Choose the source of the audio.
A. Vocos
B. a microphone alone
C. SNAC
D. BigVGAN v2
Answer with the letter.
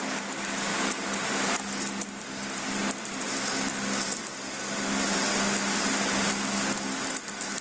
B